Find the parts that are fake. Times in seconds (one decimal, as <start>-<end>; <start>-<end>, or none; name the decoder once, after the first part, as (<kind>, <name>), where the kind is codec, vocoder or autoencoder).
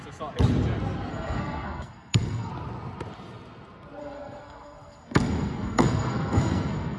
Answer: 1.1-2.5 (codec, SNAC); 4.0-7.0